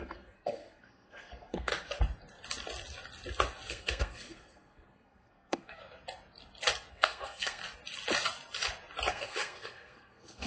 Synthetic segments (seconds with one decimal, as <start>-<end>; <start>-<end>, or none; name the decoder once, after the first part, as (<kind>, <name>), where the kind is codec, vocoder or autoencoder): 0.0-1.7 (codec, SNAC); 3.7-5.8; 6.9-7.6; 9.1-10.5